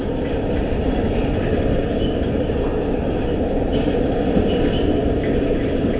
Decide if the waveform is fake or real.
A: real